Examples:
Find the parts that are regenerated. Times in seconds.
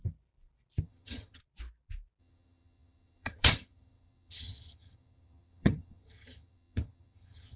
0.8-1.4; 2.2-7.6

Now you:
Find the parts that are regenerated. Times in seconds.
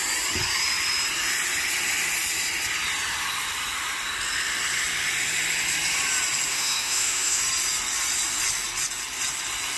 6.5-7.4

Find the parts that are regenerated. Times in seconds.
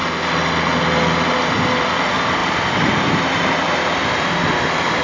1.4-5.0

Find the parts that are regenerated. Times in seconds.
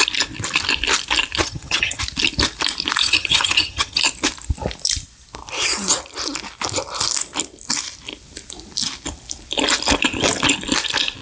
1.4-2.0; 3.0-4.0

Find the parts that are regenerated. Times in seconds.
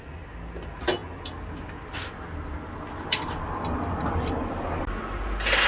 none